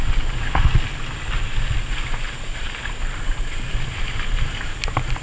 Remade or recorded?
recorded